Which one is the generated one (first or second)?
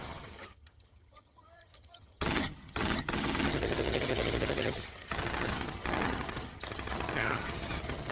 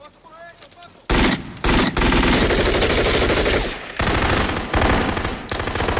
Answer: first